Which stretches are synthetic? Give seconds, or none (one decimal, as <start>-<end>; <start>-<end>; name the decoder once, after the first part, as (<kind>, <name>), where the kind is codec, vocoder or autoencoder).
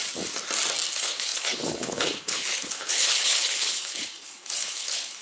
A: 0.9-5.2 (codec, HILCodec)